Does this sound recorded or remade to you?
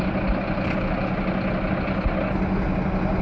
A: recorded